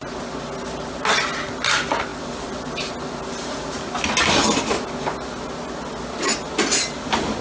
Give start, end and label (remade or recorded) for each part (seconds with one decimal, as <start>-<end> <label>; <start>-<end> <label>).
0.0-7.4 recorded